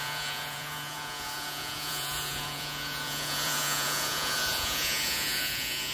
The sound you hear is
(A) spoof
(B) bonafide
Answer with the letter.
A